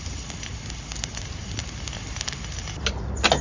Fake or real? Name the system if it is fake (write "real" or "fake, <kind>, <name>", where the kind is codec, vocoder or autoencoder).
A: real